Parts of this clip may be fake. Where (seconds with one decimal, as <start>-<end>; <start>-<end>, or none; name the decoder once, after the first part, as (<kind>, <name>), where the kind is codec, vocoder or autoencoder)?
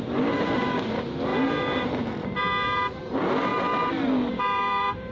0.0-5.1 (vocoder, BigVGAN v2)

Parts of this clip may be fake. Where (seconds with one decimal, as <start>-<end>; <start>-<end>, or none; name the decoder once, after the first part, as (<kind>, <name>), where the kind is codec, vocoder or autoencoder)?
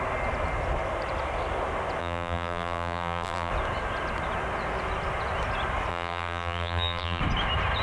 2.0-3.5 (vocoder, BigVGAN v2); 5.9-7.2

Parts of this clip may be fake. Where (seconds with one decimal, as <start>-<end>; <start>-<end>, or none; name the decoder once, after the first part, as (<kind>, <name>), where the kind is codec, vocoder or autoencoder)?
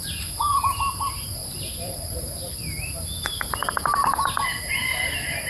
1.4-4.4 (vocoder, BigVGAN v2)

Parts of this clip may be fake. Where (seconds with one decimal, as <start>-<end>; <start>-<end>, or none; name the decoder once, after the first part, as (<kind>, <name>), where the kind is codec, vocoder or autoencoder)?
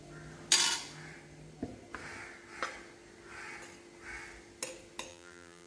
5.1-5.7 (vocoder, BigVGAN v2)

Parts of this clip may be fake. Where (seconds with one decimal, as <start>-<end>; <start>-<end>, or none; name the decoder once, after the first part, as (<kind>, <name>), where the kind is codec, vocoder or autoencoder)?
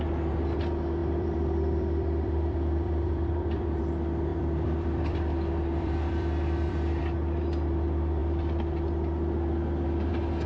1.0-3.8 (vocoder, BigVGAN v2); 4.3-7.0